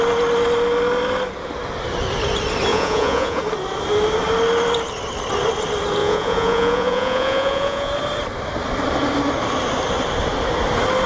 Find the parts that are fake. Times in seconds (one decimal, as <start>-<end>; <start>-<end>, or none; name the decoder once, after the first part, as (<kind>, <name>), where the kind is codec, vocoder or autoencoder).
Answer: 2.7-3.4 (vocoder, Vocos); 6.0-7.9